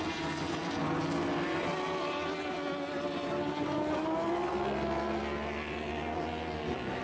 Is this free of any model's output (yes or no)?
yes